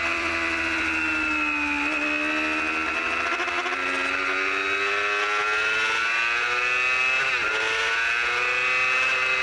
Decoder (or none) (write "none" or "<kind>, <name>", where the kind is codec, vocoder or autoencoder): none